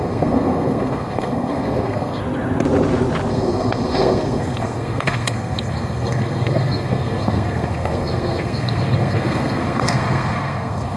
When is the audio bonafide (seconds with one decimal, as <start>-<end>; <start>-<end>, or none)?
2.2-3.3